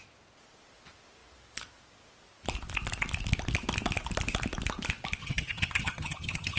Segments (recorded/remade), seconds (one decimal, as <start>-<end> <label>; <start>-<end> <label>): 0.0-5.2 recorded; 5.2-6.6 remade

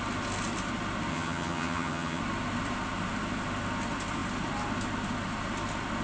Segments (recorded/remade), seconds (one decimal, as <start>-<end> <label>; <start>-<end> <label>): 0.0-1.1 recorded; 1.1-2.2 remade; 2.2-6.0 recorded